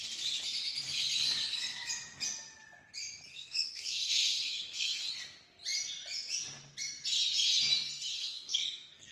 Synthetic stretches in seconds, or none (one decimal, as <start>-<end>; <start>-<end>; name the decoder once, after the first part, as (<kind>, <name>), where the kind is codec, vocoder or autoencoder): 3.3-5.1 (codec, SNAC); 8.1-9.1